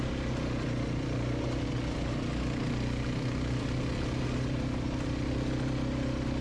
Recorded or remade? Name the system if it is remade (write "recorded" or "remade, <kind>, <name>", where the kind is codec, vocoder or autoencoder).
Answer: recorded